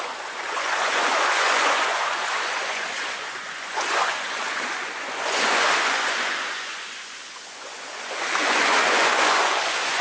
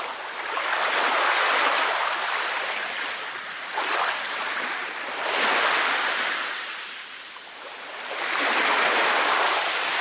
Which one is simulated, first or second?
first